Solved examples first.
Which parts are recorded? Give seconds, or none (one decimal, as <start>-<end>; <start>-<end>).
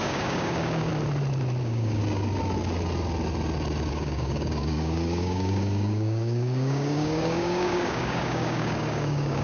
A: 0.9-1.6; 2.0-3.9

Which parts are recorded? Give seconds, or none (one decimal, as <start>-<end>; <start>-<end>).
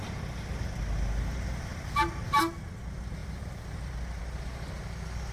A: 0.0-1.7; 2.4-3.2; 4.2-5.3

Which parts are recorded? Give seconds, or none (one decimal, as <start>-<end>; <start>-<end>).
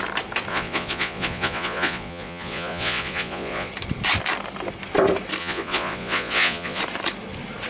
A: 0.0-0.5; 3.7-5.4; 6.8-7.7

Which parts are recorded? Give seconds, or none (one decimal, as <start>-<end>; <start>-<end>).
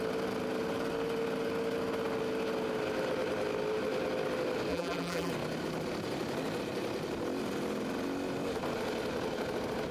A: 0.0-4.7; 5.3-9.9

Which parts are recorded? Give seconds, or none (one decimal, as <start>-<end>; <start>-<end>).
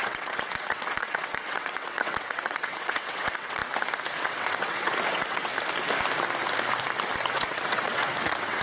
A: 3.6-4.3; 5.5-7.3